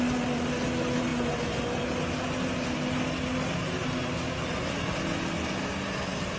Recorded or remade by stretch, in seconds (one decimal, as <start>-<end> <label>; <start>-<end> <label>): 0.0-6.4 recorded

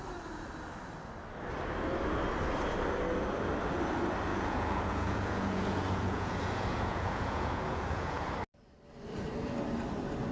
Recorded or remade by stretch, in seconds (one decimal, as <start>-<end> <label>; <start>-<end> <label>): 0.0-4.3 recorded; 4.3-8.3 remade; 8.3-10.3 recorded

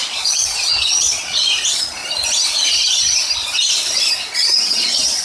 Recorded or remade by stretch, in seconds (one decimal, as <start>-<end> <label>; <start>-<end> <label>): 0.0-2.0 remade; 2.0-4.5 recorded; 4.5-5.2 remade

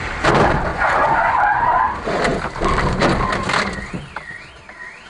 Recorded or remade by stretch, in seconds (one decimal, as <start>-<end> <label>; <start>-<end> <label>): 0.0-0.7 recorded; 0.7-1.4 remade; 1.4-5.1 recorded

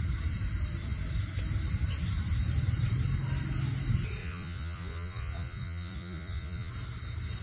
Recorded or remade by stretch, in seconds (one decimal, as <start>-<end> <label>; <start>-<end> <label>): 0.0-4.2 recorded; 4.2-6.7 remade; 6.7-7.4 recorded

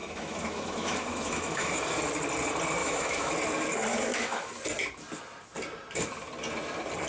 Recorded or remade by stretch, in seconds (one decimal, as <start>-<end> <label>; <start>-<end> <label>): 0.0-1.7 remade; 1.7-2.8 recorded; 2.8-3.3 remade; 3.3-3.9 recorded; 3.9-4.5 remade; 4.5-7.1 recorded

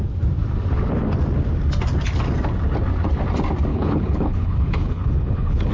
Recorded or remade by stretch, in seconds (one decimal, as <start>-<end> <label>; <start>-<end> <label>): 0.0-3.7 recorded; 3.7-5.7 remade